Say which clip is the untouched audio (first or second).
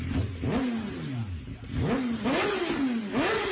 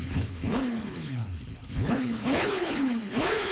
first